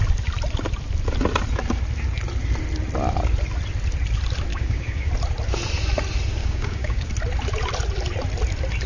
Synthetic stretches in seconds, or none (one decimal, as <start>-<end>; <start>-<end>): 4.5-5.1; 6.4-7.1